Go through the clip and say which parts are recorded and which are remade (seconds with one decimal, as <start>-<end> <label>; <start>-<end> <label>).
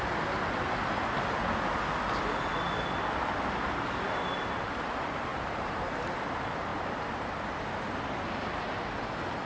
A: 0.0-5.3 recorded; 5.3-6.0 remade; 6.0-6.7 recorded; 6.7-7.4 remade; 7.4-9.5 recorded